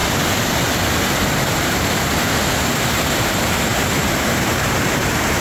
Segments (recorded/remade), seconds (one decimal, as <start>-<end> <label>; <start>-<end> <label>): 0.0-1.4 recorded; 1.4-5.4 remade